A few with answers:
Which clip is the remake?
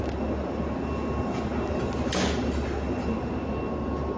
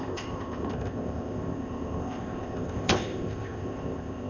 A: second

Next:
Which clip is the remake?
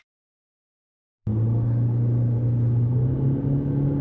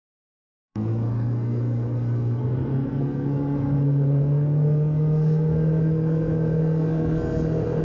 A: second